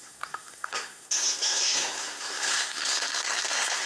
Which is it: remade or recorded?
remade